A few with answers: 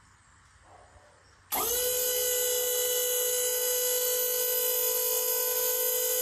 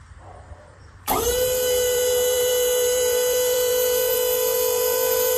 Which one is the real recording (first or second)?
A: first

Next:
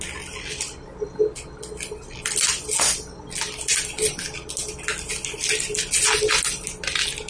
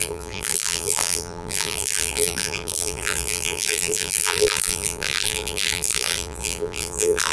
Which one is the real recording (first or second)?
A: first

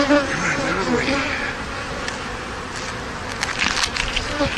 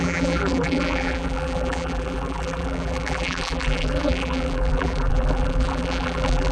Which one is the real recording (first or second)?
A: first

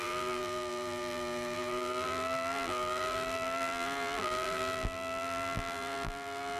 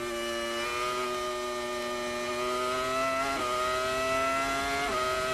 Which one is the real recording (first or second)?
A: second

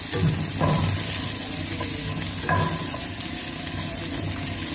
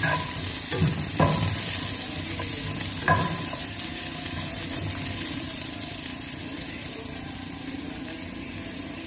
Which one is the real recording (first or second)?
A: first